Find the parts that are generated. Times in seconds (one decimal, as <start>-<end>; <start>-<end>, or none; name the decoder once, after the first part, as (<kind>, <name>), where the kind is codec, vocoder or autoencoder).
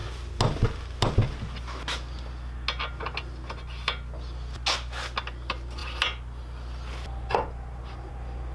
none